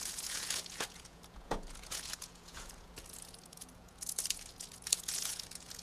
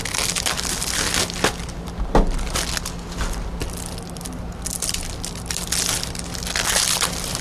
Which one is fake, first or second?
first